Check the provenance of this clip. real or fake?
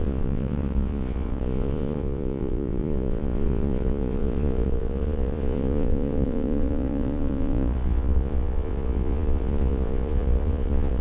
fake